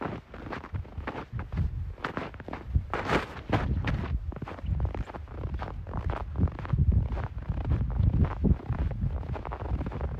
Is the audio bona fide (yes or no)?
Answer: yes